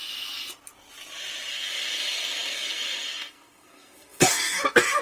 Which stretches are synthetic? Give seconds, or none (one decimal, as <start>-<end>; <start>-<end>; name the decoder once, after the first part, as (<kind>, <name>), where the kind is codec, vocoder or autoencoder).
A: 1.5-5.0 (codec, SNAC)